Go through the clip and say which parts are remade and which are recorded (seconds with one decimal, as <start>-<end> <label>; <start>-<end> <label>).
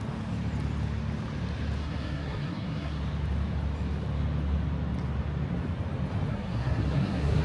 0.0-1.8 recorded; 1.8-3.0 remade; 3.0-6.3 recorded; 6.3-7.4 remade